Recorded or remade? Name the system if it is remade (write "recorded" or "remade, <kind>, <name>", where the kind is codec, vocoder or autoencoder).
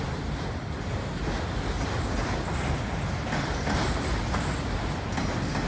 recorded